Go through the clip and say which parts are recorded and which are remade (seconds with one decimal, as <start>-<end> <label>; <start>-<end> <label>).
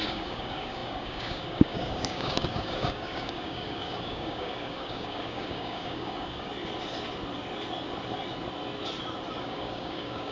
0.0-6.5 remade; 6.5-9.4 recorded; 9.4-10.3 remade